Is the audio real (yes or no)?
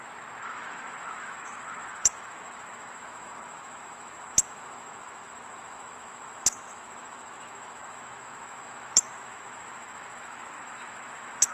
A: no